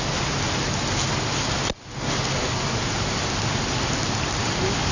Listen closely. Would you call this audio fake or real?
real